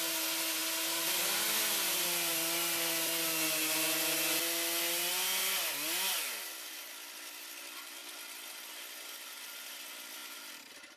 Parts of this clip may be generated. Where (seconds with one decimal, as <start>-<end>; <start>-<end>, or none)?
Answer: none